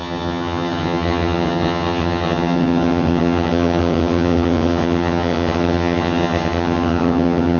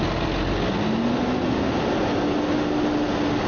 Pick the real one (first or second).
second